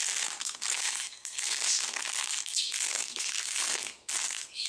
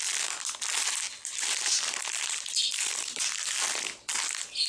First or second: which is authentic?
second